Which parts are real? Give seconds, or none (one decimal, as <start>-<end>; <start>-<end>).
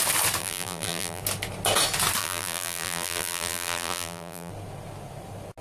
0.0-0.4; 1.2-2.2; 4.5-5.6